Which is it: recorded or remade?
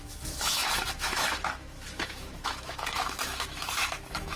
remade